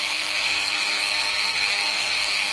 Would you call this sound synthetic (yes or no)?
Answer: yes